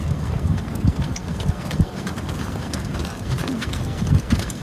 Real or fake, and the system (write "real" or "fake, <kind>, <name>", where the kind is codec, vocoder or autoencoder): fake, codec, SNAC